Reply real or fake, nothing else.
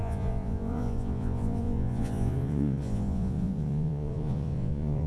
fake